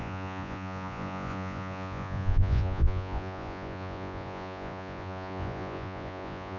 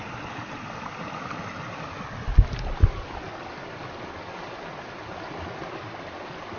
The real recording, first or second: second